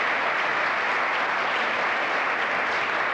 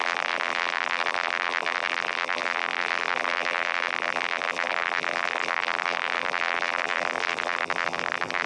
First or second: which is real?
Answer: first